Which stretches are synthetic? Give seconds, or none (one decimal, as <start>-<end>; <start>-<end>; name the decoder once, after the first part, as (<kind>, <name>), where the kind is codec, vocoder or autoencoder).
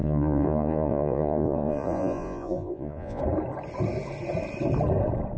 0.0-3.2 (vocoder, Vocos)